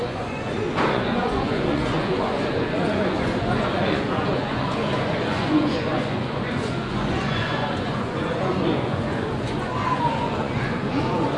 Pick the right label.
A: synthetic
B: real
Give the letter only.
A